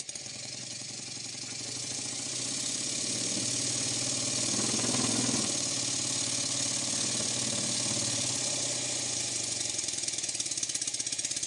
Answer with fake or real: fake